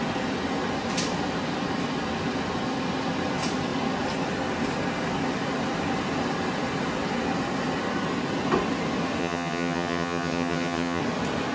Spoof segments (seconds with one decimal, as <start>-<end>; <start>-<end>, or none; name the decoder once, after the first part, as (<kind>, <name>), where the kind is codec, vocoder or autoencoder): 9.2-11.0 (vocoder, HiFi-GAN)